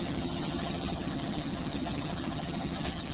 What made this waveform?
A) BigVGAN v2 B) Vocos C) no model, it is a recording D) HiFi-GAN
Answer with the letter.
D